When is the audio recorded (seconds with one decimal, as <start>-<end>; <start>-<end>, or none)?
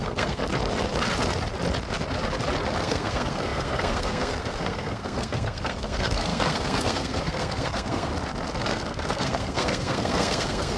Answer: 0.4-2.8; 8.1-8.6